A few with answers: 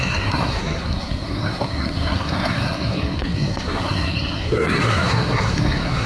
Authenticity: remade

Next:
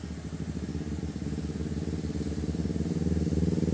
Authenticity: recorded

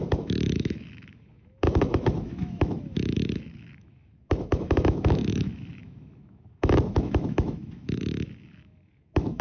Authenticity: remade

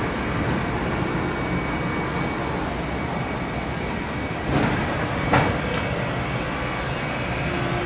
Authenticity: recorded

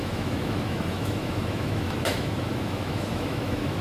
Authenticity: remade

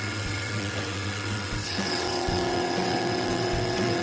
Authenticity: remade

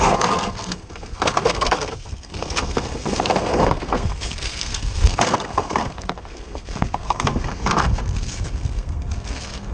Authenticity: remade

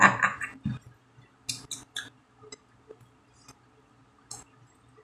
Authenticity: recorded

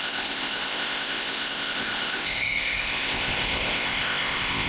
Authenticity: remade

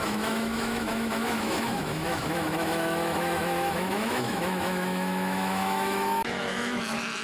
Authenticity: remade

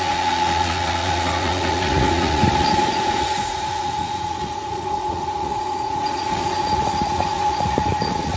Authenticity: remade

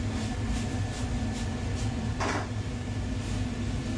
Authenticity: recorded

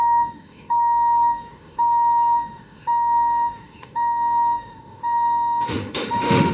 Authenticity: remade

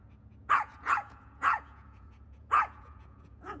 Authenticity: remade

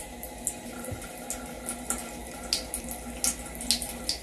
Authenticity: recorded